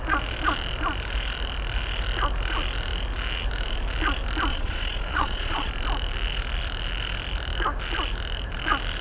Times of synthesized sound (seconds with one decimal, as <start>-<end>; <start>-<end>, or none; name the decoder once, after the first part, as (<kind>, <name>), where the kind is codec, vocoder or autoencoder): 4.5-5.7 (vocoder, Vocos)